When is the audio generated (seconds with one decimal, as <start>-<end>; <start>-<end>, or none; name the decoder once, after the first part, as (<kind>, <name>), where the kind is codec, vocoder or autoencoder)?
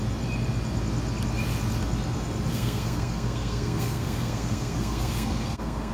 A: 2.5-5.9 (codec, SNAC)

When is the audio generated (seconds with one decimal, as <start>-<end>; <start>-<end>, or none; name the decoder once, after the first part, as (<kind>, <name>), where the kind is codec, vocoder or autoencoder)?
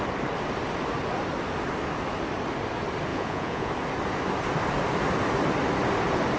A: 3.1-3.7 (vocoder, Vocos)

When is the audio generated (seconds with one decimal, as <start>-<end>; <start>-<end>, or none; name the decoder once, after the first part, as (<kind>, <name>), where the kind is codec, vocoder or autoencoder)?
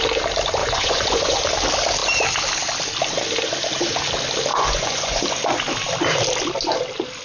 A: 0.6-1.4 (vocoder, Vocos); 4.5-5.2